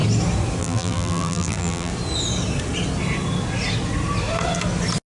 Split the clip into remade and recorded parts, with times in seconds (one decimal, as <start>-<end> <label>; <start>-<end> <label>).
0.0-0.6 recorded; 0.6-1.9 remade; 1.9-5.1 recorded

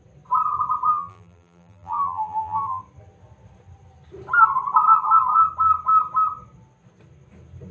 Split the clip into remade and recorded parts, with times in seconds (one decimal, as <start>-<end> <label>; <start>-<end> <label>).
0.0-0.9 recorded; 0.9-2.8 remade; 2.8-7.7 recorded

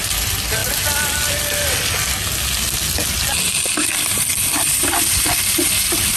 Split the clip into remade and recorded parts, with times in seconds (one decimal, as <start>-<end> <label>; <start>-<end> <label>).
0.0-6.2 recorded

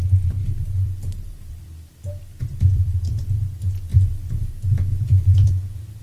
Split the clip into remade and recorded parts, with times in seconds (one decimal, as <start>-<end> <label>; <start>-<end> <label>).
0.0-0.4 recorded; 0.4-3.4 remade; 3.4-3.9 recorded; 3.9-4.5 remade; 4.5-4.9 recorded; 4.9-5.5 remade; 5.5-6.0 recorded

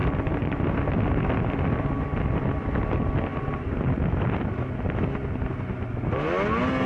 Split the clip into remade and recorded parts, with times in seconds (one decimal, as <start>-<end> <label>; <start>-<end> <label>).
0.0-2.5 remade; 2.5-3.3 recorded; 3.3-5.0 remade; 5.0-6.9 recorded

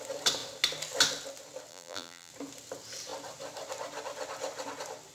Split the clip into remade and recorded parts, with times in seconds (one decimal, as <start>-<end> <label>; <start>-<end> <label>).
0.0-1.7 recorded; 1.7-2.3 remade; 2.3-5.1 recorded

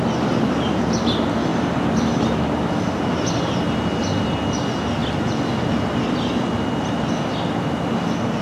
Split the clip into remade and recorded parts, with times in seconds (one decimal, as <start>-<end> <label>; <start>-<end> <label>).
0.0-8.4 recorded

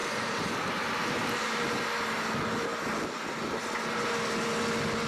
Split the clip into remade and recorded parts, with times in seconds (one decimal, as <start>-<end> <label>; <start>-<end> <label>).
0.0-0.5 remade; 0.5-1.0 recorded; 1.0-1.8 remade; 1.8-5.1 recorded